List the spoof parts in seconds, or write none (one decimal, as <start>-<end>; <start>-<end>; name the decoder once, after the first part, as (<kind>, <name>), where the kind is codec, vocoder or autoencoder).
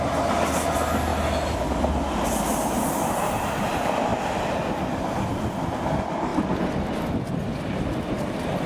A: none